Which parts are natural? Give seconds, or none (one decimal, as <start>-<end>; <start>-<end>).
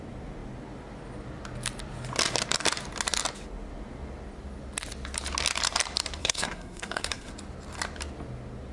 0.0-6.2; 7.3-8.7